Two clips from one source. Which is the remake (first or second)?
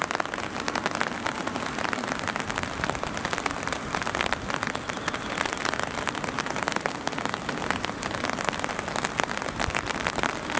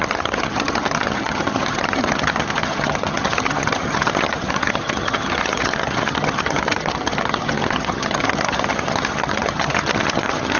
second